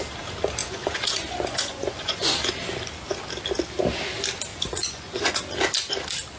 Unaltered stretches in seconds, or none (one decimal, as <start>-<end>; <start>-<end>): 0.0-0.6; 2.3-4.5; 5.3-6.4